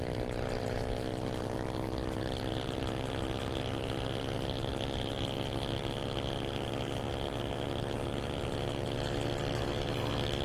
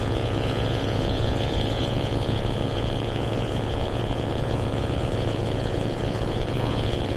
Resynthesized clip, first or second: second